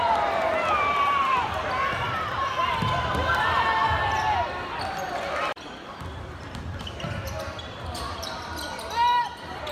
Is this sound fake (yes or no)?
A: yes